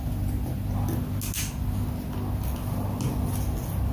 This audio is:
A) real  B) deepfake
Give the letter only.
A